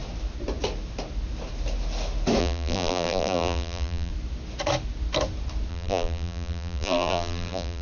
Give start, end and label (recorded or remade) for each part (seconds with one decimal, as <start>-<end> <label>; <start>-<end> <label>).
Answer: 0.0-2.4 recorded; 2.4-4.1 remade; 4.1-5.7 recorded; 5.7-7.8 remade